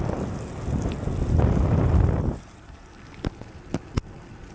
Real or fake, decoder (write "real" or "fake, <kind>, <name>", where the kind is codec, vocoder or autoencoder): real